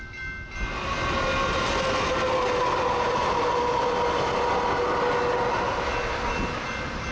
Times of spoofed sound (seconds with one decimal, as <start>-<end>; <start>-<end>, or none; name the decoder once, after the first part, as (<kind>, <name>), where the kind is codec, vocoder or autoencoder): none